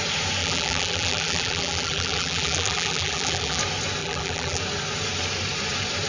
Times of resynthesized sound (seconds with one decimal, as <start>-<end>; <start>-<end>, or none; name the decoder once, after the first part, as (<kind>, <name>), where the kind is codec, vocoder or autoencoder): 0.4-3.6 (vocoder, BigVGAN v2); 4.0-4.6